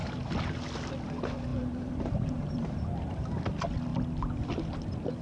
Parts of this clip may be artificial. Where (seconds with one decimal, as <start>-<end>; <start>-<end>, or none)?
1.5-2.7